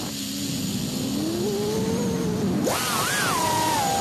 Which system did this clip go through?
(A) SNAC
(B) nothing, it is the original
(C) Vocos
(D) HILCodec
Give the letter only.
B